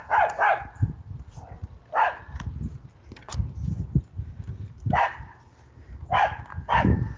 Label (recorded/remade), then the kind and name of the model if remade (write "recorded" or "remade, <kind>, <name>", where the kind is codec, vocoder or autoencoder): recorded